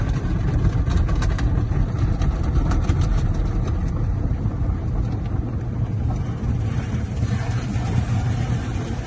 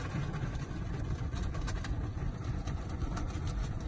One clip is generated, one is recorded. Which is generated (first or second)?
second